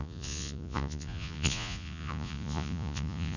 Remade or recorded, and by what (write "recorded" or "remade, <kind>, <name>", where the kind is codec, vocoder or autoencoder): remade, vocoder, Vocos